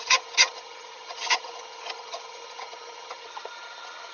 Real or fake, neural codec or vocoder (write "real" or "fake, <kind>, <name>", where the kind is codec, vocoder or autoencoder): fake, vocoder, HiFi-GAN